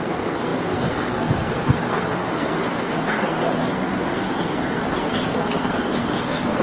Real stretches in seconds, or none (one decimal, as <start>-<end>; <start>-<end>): none